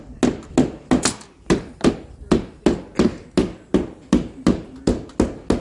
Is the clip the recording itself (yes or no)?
yes